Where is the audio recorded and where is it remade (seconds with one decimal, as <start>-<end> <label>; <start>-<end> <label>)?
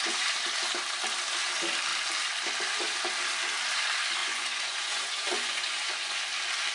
0.0-4.2 recorded; 4.2-6.2 remade; 6.2-6.7 recorded